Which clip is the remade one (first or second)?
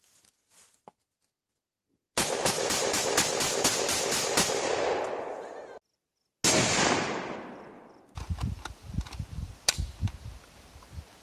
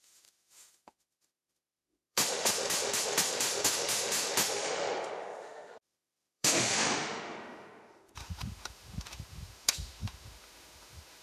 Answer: second